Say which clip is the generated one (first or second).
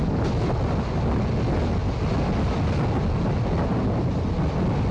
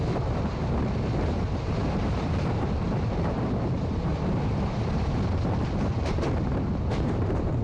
second